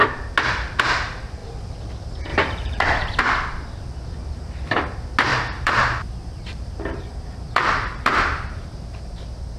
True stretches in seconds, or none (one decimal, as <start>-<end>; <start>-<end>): 0.0-2.3; 3.2-5.3; 9.2-9.6